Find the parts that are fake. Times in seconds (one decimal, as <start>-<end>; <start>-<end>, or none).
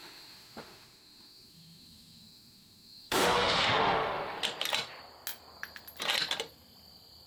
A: 0.0-4.4